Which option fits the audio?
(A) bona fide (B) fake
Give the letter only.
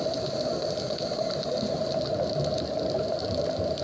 A